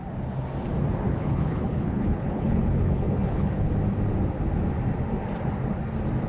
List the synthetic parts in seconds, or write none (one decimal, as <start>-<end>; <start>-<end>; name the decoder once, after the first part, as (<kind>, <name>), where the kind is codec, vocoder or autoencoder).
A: 1.1-3.7 (codec, HILCodec)